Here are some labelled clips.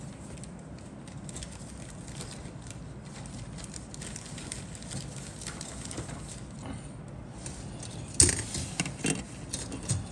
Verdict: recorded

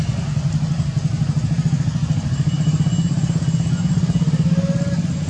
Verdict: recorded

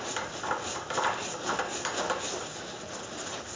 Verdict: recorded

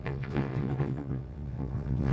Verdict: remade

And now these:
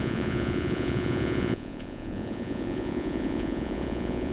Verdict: remade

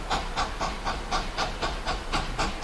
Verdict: recorded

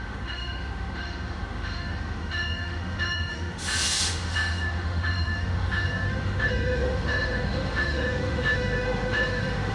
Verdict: remade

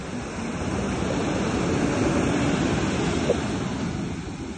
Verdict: recorded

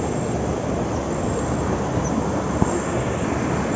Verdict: recorded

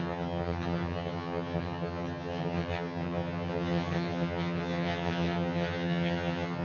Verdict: remade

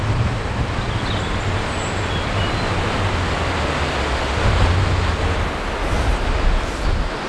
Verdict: recorded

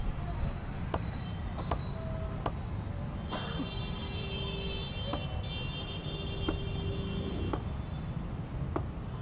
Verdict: recorded